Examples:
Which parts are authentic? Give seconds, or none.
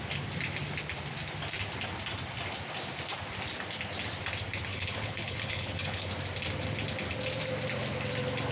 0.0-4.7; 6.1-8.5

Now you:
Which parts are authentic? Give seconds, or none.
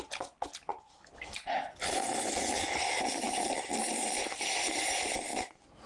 0.0-5.9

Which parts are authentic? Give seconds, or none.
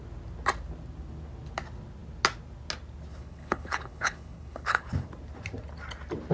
0.0-3.1; 5.1-6.3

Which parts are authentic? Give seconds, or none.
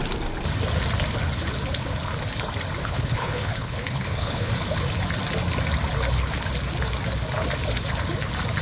0.0-2.8; 4.5-8.6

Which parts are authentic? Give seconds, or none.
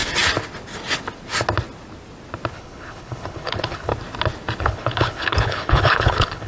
0.0-2.5; 3.9-4.6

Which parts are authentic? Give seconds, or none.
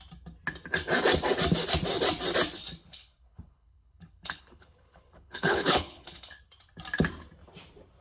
0.0-2.8; 6.4-8.0